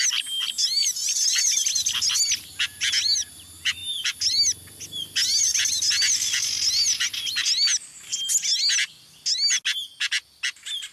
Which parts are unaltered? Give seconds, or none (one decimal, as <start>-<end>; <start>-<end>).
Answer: 0.0-10.9